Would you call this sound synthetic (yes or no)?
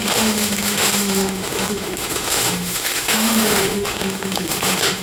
yes